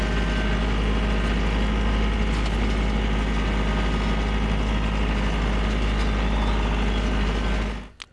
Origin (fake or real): real